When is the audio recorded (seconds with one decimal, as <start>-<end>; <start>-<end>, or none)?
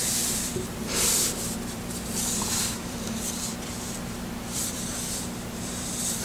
none